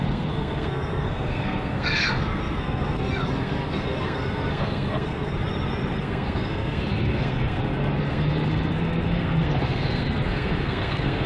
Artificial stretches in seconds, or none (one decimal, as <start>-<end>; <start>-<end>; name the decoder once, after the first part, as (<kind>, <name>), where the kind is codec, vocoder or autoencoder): 0.0-5.4 (codec, SNAC); 6.0-11.3